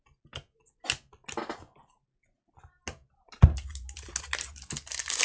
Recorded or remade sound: recorded